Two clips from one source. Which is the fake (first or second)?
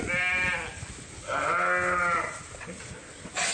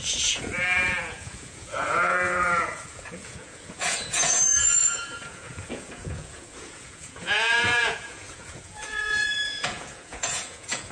second